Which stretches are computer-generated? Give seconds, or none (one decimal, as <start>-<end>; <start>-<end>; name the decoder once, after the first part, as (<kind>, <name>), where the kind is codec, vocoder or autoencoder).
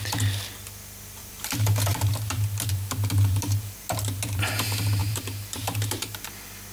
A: 1.2-4.4 (vocoder, BigVGAN v2); 5.0-6.3